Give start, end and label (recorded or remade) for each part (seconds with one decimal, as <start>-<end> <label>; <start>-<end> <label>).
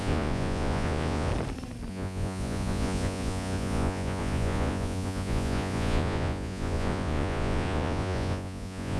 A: 0.0-1.3 remade; 1.3-1.9 recorded; 1.9-9.0 remade